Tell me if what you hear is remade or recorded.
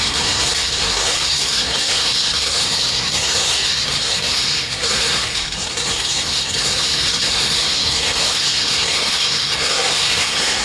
remade